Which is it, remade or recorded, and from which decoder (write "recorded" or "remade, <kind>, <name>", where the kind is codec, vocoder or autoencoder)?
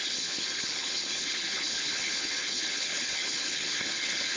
remade, codec, HILCodec